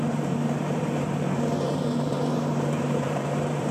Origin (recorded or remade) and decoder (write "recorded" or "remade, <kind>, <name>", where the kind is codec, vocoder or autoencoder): remade, vocoder, BigVGAN v2